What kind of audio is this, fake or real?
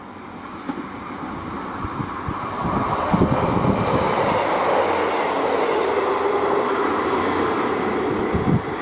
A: real